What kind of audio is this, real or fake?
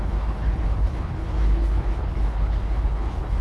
fake